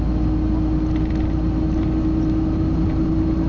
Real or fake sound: real